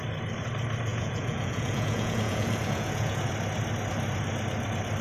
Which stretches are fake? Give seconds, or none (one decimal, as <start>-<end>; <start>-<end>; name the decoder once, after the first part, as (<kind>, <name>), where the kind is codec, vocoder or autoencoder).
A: 0.9-3.3 (vocoder, Vocos)